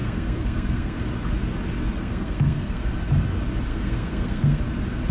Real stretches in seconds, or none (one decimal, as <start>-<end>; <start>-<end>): 1.0-2.0; 2.9-3.7; 4.6-5.1